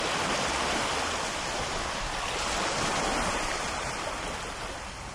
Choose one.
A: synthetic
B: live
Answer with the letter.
B